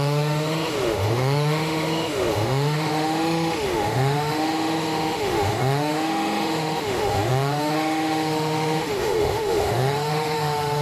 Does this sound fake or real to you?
fake